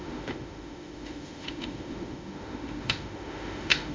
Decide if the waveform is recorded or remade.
remade